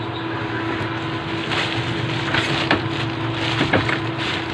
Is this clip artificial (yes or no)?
no